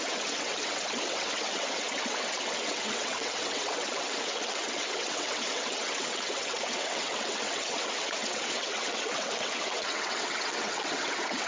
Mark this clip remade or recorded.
remade